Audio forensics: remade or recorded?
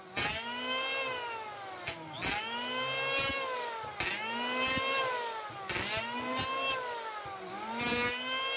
recorded